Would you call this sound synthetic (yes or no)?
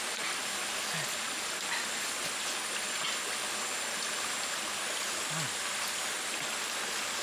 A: no